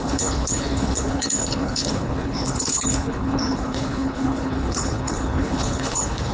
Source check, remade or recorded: remade